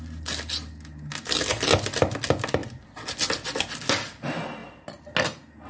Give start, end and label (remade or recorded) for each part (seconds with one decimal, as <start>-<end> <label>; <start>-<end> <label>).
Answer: 0.0-2.6 recorded; 2.6-3.3 remade; 3.3-4.6 recorded; 4.6-5.1 remade; 5.1-5.7 recorded